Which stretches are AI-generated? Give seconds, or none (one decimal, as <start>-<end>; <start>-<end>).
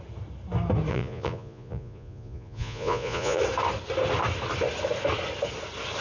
0.9-3.4